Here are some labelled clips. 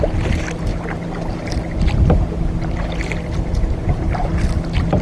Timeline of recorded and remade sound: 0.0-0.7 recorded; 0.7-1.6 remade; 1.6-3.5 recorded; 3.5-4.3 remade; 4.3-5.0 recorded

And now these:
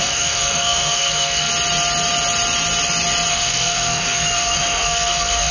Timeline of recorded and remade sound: 0.0-1.5 remade; 1.5-3.3 recorded; 3.3-5.5 remade